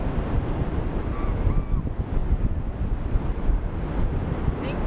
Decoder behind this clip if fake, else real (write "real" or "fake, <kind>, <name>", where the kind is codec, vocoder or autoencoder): real